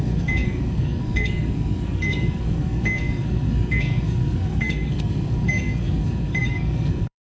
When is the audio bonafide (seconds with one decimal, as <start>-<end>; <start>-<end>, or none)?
none

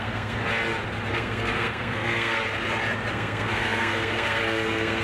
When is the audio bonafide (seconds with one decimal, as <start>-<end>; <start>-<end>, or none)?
0.4-1.1; 2.4-3.1

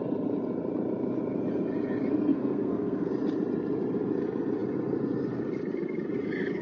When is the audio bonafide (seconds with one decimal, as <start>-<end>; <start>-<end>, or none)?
0.0-2.3; 3.1-6.6

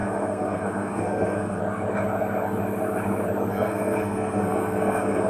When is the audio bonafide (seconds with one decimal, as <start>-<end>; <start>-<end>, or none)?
1.6-3.5

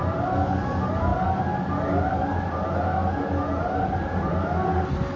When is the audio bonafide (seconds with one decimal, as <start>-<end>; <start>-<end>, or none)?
0.0-5.2

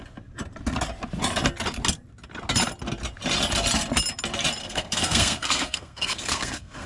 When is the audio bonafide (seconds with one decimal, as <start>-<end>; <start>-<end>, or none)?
0.0-4.6